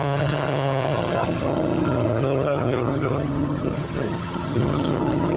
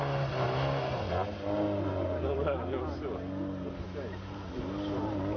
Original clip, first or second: second